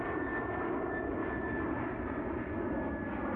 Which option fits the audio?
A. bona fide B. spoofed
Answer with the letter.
A